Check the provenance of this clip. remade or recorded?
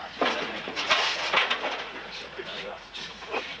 remade